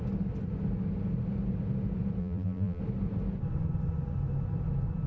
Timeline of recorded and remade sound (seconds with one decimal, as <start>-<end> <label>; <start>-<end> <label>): 0.0-2.2 recorded; 2.2-2.8 remade; 2.8-5.1 recorded